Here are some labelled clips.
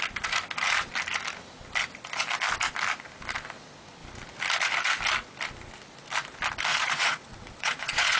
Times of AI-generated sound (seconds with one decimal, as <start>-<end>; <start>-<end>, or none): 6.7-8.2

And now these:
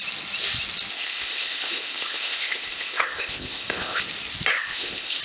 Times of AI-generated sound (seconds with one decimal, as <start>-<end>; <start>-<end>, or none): 0.9-4.0; 4.5-5.2

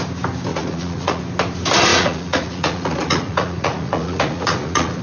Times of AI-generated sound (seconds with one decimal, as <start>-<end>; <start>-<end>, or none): 0.5-1.2; 1.9-5.0

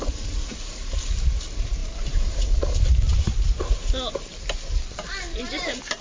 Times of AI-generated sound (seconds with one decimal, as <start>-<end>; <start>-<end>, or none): 0.0-6.0

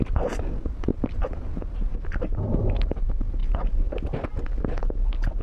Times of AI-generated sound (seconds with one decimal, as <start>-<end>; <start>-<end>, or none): 0.9-1.5